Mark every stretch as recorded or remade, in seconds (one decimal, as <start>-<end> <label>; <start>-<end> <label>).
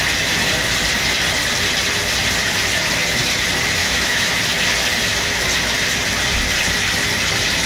0.0-3.8 recorded; 3.8-4.4 remade; 4.4-7.7 recorded